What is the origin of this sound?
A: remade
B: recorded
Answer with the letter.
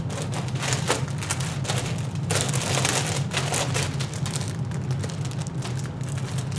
B